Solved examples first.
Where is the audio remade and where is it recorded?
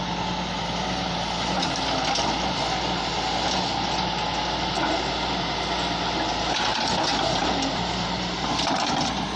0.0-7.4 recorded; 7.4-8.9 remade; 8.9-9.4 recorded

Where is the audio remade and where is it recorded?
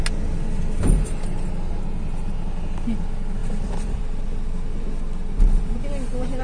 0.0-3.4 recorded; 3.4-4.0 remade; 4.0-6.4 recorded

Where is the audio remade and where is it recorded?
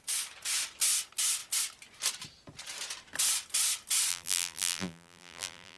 0.0-4.1 recorded; 4.1-5.8 remade